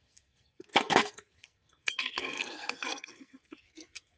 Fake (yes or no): yes